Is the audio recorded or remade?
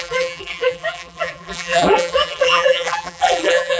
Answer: remade